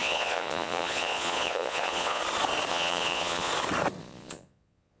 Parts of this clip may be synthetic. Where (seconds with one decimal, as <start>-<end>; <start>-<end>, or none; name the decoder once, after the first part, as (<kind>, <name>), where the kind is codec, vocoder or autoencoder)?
0.0-2.2 (vocoder, Vocos); 2.7-3.5; 4.0-5.0